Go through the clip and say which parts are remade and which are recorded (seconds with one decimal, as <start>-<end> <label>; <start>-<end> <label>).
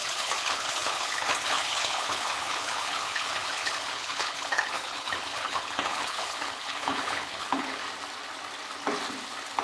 0.0-7.8 remade; 7.8-9.6 recorded